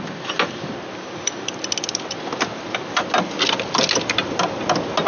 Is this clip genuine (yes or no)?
yes